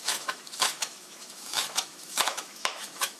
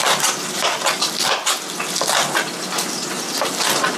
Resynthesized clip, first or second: first